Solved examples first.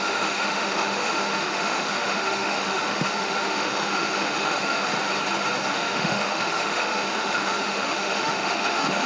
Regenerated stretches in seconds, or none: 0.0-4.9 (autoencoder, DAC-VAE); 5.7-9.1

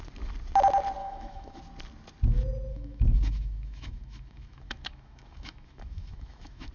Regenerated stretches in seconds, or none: 1.0-1.6 (autoencoder, DAC-VAE); 2.7-6.7